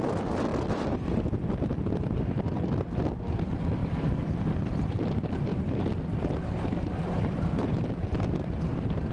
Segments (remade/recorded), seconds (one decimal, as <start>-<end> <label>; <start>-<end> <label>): 0.0-3.8 remade; 3.8-4.4 recorded; 4.4-5.5 remade; 5.5-6.7 recorded; 6.7-7.5 remade; 7.5-9.1 recorded